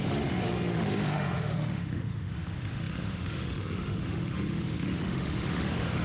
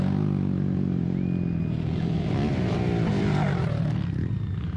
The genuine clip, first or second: second